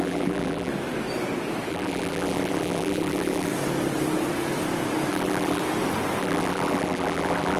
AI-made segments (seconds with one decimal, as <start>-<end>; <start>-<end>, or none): 0.0-0.7; 1.7-3.5; 5.1-5.6; 6.2-7.6